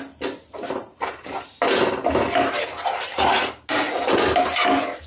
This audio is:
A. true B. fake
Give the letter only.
A